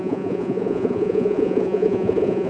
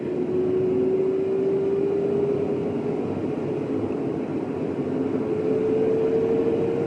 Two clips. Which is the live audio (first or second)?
second